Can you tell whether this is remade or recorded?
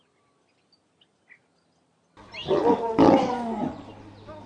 recorded